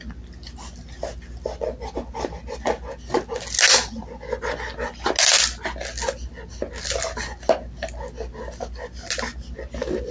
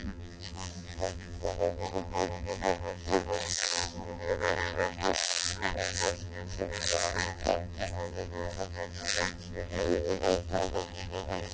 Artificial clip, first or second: second